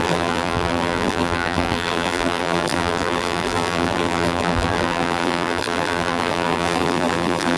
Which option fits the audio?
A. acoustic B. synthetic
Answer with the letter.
B